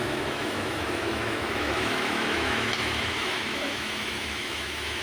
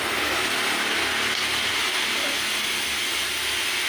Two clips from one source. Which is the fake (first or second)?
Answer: first